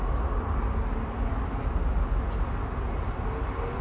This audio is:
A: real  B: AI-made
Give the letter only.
A